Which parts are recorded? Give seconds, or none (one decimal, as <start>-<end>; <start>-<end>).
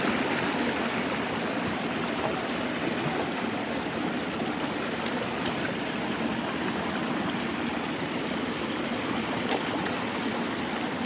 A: 0.0-11.1